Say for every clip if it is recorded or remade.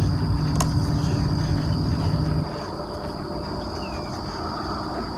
recorded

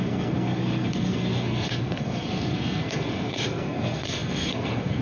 remade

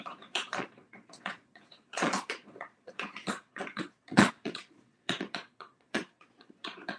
remade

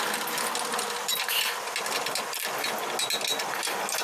recorded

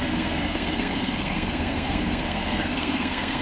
remade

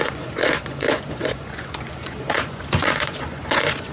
remade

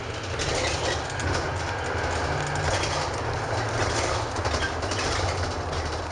recorded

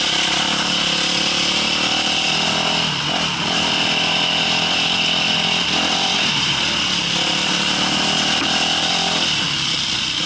recorded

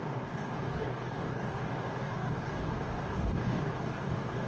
remade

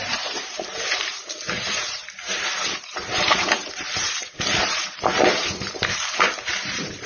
remade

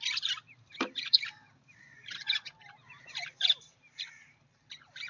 remade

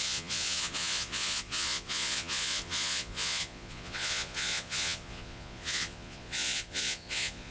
remade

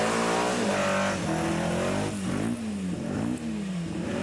recorded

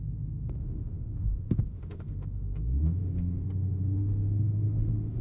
remade